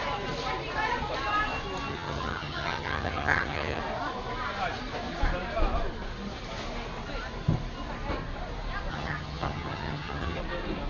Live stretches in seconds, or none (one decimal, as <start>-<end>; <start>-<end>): 0.0-1.9; 3.8-8.9; 10.4-10.9